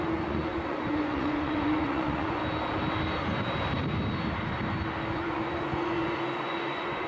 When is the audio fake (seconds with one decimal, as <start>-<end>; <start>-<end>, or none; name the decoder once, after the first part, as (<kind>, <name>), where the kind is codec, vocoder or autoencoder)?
0.0-2.4 (vocoder, Vocos); 5.1-7.1